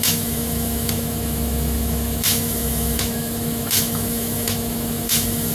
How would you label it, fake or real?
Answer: fake